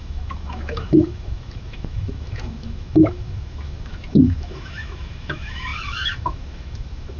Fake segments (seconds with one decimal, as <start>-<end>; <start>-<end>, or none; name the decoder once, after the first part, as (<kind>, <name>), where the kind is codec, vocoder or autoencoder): 0.0-7.2 (autoencoder, DAC-VAE)